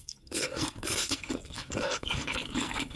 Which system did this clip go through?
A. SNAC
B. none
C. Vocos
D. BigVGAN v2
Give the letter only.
A